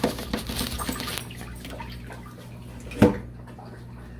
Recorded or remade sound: recorded